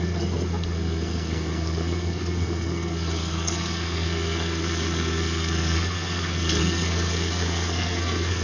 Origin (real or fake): fake